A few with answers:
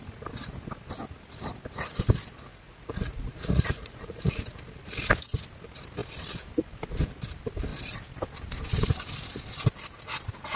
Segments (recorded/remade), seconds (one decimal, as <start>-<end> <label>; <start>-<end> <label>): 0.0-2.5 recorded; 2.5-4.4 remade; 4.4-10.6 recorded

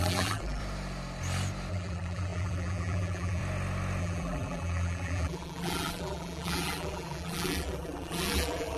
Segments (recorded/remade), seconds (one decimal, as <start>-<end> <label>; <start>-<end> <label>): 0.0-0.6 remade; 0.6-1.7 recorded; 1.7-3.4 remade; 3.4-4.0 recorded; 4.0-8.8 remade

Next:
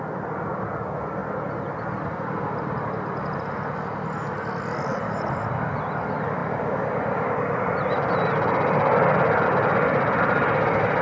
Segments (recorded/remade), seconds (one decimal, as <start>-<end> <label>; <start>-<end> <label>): 0.0-11.0 recorded